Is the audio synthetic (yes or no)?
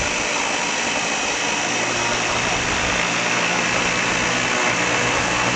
no